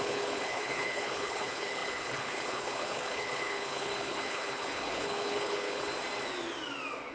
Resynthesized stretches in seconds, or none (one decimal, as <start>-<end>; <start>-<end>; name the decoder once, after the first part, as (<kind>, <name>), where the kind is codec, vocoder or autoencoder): 0.0-5.9 (codec, HILCodec)